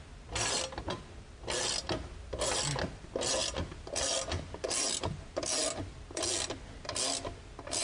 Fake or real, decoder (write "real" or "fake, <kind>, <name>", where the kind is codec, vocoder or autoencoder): real